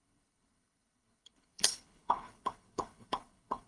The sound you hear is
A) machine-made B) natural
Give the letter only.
A